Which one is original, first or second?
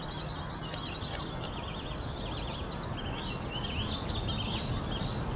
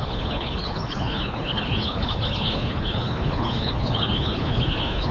first